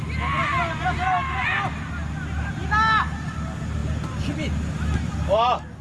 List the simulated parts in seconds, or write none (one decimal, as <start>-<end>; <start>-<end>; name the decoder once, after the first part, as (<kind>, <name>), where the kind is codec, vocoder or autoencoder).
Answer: none